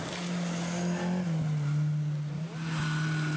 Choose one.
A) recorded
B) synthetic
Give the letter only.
A